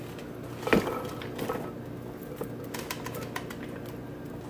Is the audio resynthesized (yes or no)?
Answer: no